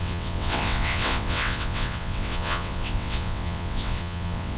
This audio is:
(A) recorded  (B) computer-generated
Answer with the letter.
B